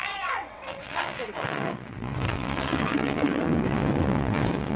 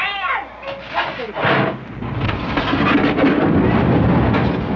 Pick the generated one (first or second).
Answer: first